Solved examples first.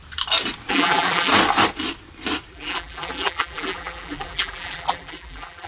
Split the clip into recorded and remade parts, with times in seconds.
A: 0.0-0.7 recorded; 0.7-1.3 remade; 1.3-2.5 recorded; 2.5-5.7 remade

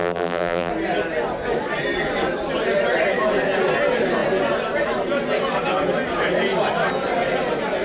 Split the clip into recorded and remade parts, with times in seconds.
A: 0.0-0.7 remade; 0.7-7.8 recorded

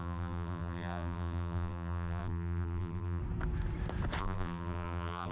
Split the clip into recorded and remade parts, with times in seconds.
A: 0.0-3.2 remade; 3.2-4.2 recorded; 4.2-5.3 remade